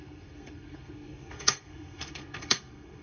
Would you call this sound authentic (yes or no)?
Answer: no